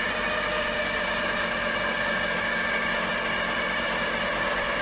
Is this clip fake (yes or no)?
no